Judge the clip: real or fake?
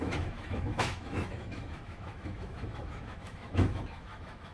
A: fake